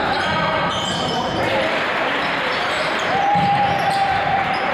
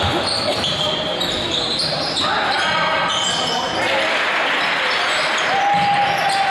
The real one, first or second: second